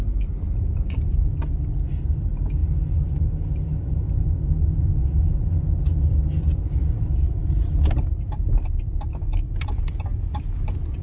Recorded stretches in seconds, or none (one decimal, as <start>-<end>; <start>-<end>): 0.0-6.8; 9.7-11.0

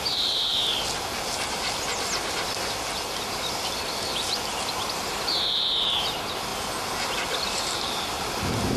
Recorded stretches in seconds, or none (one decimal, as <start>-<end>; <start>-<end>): 0.5-5.0; 6.5-7.1

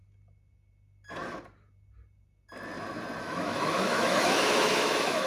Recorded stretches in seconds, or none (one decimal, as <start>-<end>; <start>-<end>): 0.0-3.2

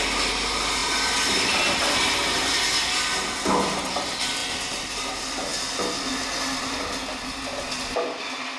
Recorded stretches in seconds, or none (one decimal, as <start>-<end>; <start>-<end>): 0.0-8.6